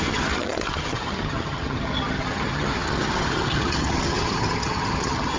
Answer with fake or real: fake